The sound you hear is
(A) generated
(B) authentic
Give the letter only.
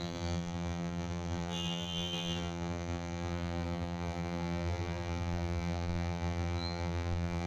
A